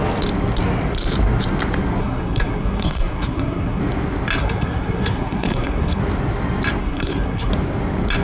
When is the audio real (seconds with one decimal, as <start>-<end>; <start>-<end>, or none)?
0.0-2.0; 3.8-4.4; 6.0-6.8; 7.5-8.2

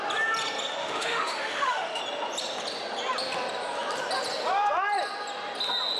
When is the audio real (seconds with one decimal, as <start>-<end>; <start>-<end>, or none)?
0.0-0.8; 2.0-6.0

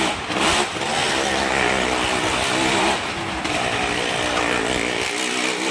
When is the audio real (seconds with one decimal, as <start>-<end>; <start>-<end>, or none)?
0.0-5.7

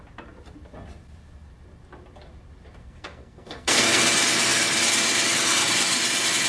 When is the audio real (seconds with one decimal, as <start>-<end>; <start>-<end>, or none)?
0.0-2.8; 4.0-6.5

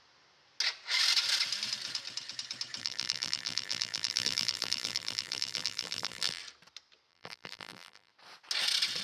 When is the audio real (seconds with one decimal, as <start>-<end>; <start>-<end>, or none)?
0.0-2.8; 6.4-7.1; 8.1-9.0

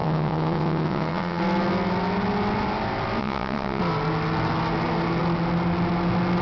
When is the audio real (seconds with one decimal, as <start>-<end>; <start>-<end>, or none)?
1.4-3.2; 3.8-6.4